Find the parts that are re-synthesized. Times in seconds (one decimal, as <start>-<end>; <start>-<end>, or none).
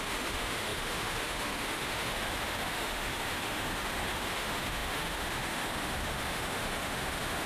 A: 0.0-7.5